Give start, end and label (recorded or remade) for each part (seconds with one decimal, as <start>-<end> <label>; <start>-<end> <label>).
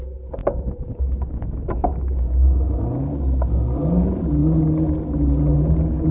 0.0-6.1 recorded